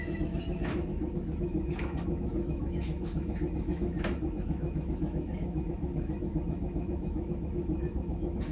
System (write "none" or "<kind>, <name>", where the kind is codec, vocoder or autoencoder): autoencoder, DAC-VAE